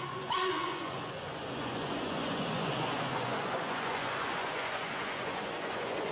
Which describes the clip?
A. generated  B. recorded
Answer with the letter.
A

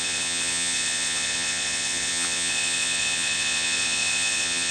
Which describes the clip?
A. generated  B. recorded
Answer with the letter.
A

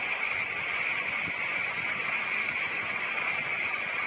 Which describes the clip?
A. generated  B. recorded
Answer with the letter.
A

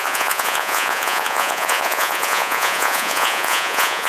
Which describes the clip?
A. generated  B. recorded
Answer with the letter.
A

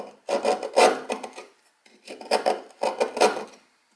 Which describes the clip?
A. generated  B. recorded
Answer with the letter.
B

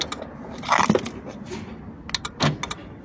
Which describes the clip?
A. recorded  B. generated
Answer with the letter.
A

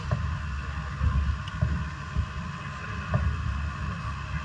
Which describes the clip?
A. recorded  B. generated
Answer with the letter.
A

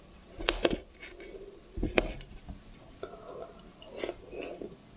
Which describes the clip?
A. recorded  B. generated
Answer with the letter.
A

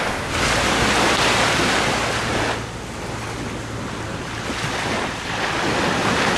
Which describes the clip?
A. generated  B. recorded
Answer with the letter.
B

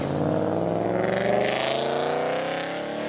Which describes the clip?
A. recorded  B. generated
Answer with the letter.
A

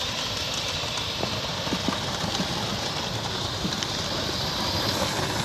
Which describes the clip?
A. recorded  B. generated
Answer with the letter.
A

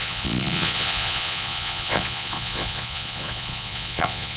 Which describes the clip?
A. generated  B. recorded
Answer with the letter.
A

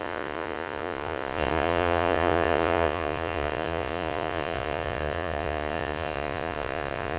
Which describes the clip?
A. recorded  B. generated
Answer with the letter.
B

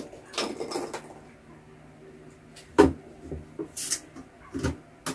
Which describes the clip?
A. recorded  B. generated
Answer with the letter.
A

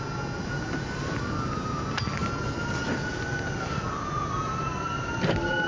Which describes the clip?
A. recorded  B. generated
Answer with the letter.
A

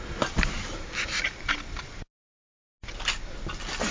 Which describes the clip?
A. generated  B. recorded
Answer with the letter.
B